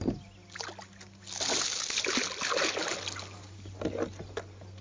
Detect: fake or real real